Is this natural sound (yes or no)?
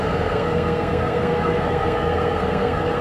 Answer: no